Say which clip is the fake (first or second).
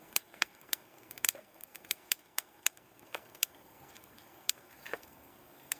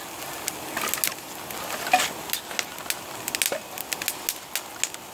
first